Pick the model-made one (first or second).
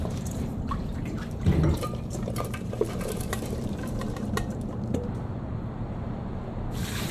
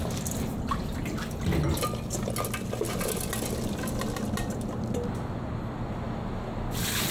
first